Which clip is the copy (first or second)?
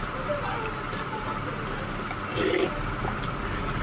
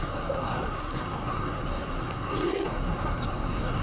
second